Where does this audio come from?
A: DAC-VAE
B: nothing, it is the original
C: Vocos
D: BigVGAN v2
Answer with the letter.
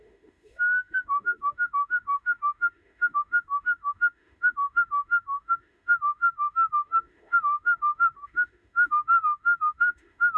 A